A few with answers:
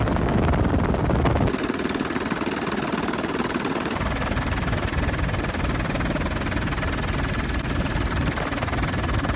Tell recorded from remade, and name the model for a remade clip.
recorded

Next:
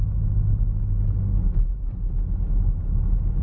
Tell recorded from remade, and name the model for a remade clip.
recorded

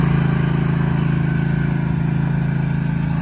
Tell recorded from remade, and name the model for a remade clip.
recorded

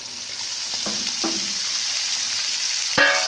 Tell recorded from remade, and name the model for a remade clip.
recorded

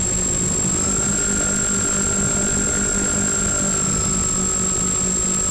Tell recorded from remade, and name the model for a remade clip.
recorded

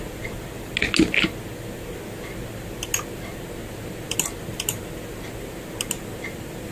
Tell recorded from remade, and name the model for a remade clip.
recorded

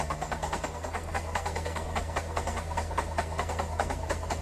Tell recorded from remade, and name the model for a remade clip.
remade, codec, SNAC